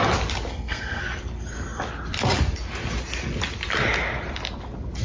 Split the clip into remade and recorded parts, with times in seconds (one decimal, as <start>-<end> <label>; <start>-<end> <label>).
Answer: 0.0-0.5 recorded; 0.5-1.0 remade; 1.0-5.0 recorded